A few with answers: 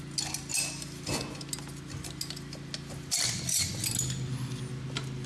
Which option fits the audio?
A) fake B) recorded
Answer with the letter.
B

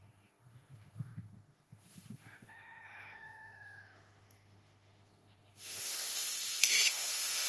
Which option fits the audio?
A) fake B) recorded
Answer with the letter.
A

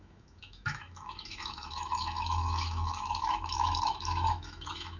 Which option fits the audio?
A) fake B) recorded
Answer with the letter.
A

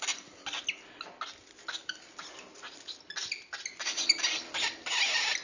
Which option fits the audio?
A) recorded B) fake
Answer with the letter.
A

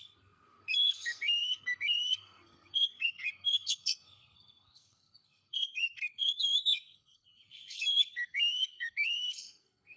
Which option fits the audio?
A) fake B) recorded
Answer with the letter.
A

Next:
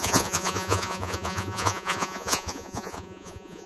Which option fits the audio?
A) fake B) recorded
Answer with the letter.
A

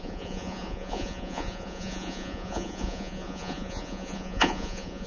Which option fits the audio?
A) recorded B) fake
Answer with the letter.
B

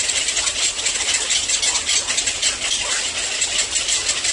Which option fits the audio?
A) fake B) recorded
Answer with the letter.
B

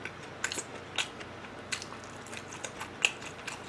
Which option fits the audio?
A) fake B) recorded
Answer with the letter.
B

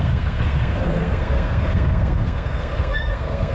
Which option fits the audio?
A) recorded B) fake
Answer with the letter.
B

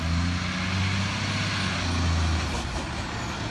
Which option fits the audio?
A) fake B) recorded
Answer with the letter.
B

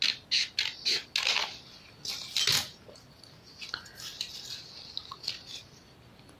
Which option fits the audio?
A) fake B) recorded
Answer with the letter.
B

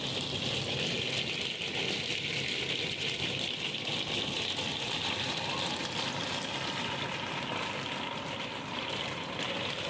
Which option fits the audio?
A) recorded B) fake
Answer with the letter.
A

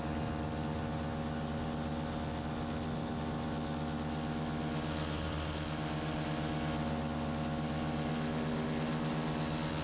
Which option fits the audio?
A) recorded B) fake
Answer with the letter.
A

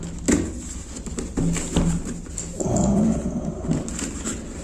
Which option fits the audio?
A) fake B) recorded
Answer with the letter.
B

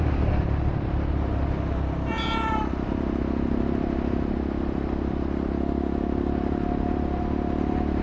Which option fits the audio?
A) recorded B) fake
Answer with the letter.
A